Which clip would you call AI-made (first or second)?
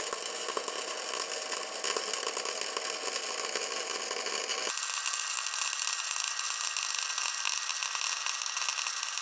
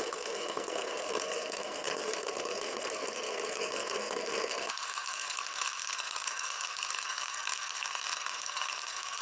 second